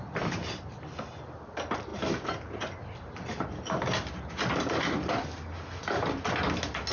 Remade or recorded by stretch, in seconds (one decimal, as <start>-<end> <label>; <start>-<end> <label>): 0.0-6.9 recorded